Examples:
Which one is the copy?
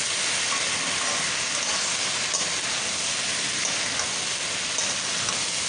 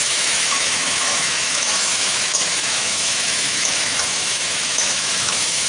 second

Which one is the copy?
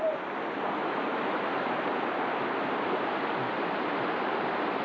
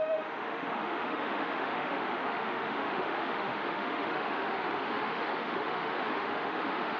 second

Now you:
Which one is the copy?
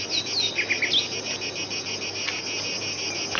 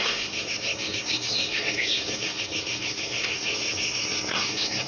second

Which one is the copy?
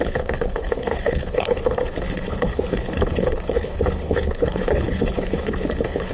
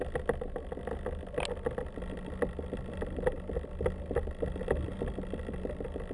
first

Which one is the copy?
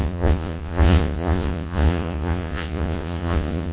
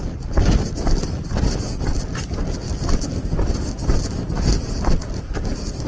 first